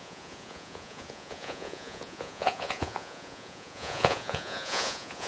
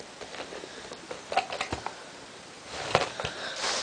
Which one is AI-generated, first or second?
first